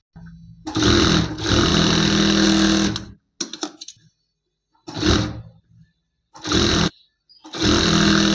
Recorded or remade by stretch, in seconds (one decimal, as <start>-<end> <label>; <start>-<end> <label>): 0.0-8.3 recorded